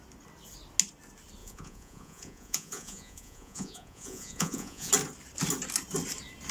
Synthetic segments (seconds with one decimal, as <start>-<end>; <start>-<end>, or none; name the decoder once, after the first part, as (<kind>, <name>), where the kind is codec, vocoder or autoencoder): 1.4-4.9 (vocoder, Vocos)